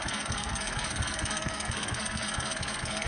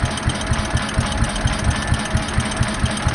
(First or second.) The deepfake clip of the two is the first